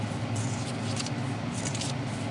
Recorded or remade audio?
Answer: recorded